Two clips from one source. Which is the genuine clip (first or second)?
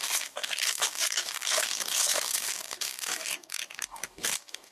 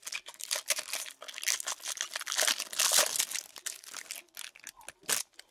second